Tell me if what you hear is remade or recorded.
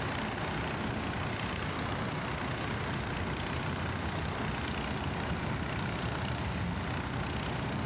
recorded